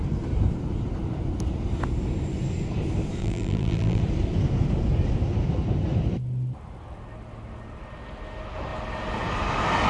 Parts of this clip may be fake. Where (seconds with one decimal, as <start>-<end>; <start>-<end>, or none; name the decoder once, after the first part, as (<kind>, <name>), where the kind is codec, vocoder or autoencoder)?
3.2-4.0 (vocoder, BigVGAN v2)